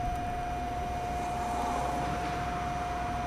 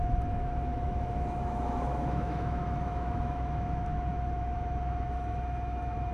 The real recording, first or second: first